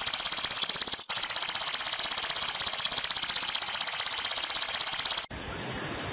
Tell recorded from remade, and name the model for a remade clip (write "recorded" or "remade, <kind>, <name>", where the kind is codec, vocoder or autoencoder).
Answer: recorded